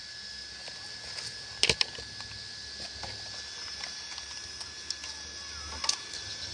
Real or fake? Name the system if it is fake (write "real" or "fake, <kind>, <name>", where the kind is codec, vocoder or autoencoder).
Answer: real